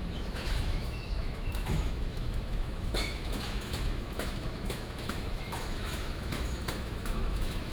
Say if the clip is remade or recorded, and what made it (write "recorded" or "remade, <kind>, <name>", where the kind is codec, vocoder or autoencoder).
remade, autoencoder, DAC-VAE